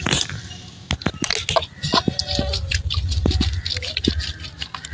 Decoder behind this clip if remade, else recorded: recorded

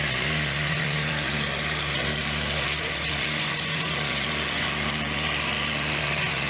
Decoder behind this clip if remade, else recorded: remade, vocoder, Vocos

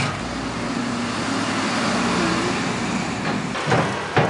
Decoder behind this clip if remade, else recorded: recorded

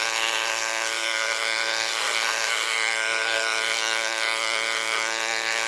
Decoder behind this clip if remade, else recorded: remade, codec, SNAC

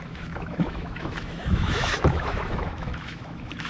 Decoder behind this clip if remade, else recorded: remade, autoencoder, DAC-VAE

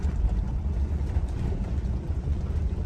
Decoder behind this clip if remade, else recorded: remade, vocoder, Vocos